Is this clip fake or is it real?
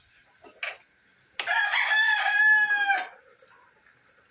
real